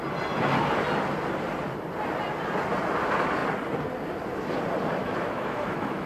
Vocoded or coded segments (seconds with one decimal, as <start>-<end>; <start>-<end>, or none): 5.0-6.1